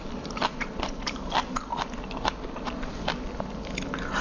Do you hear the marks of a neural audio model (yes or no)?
yes